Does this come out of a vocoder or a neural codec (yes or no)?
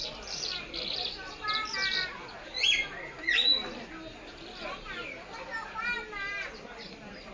no